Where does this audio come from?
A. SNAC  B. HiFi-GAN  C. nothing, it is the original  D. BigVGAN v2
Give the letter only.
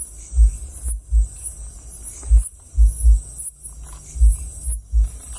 C